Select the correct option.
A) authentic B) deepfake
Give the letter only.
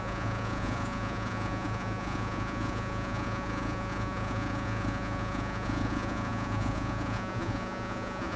B